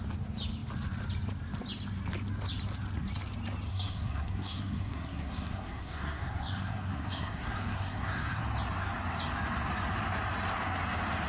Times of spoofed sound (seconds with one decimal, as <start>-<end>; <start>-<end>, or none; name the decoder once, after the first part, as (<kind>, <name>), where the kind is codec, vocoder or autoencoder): 3.7-8.4 (codec, SNAC)